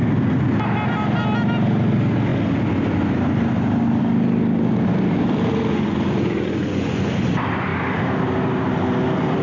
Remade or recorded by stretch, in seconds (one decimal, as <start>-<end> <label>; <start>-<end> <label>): 0.0-5.7 recorded; 5.7-7.1 remade; 7.1-9.4 recorded